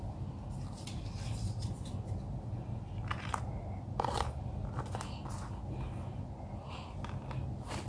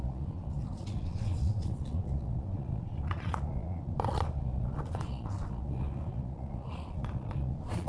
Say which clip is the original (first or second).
first